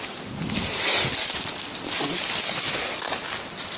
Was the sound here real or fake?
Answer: real